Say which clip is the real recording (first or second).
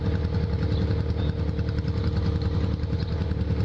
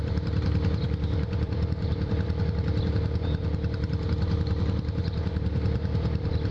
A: first